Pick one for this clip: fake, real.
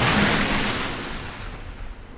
real